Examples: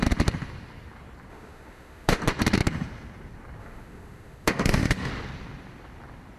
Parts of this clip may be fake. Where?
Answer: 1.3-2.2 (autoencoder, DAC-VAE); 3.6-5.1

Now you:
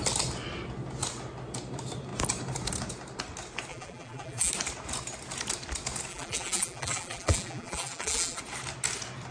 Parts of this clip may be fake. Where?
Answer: 3.7-4.5 (vocoder, BigVGAN v2); 6.1-8.4